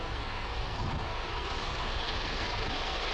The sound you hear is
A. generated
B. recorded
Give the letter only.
A